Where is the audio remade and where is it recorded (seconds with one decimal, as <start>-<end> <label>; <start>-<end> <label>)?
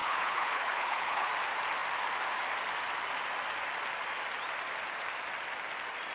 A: 0.0-1.3 remade; 1.3-6.1 recorded